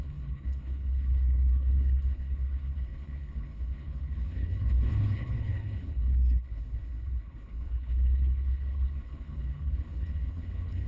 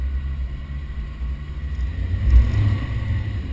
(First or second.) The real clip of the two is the second